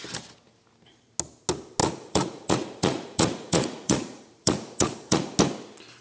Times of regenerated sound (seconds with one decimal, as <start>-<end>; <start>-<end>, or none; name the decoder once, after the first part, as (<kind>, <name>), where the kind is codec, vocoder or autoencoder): 1.8-5.4 (vocoder, Vocos)